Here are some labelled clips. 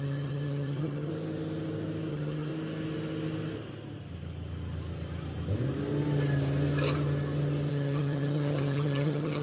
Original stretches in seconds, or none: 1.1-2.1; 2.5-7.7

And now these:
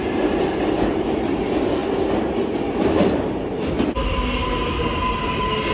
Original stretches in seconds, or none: 0.0-5.7

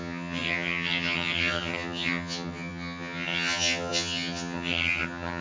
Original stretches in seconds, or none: none

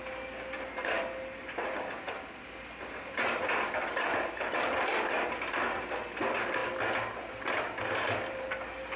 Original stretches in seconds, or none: 0.0-9.0

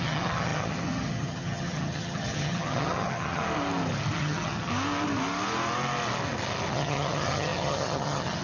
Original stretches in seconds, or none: 3.4-4.2; 4.7-6.7

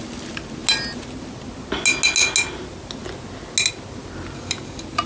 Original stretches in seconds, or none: 0.0-5.1

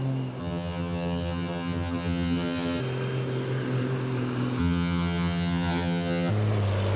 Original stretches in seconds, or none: 0.0-0.4; 2.8-4.6; 6.3-7.0